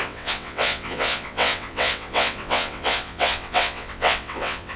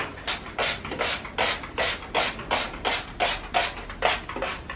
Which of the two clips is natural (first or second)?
second